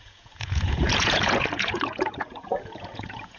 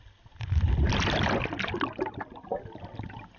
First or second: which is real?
second